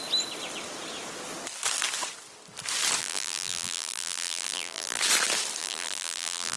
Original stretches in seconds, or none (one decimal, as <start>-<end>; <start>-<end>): 0.0-3.0; 5.0-5.6